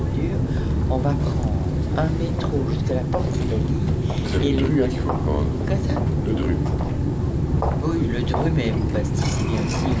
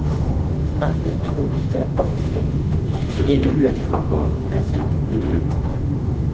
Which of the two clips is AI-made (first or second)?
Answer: second